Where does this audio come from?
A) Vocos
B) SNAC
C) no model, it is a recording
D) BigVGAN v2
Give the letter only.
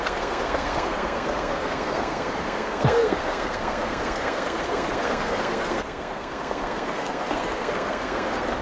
B